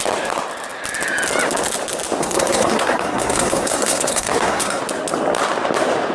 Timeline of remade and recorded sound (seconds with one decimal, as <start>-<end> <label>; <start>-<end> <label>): 0.0-2.2 recorded; 2.2-4.8 remade; 4.8-6.1 recorded